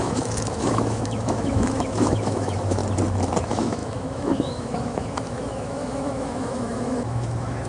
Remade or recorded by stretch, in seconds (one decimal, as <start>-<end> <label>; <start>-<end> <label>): 0.0-2.8 remade; 2.8-3.4 recorded; 3.4-7.7 remade